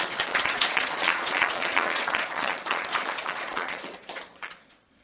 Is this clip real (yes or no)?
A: no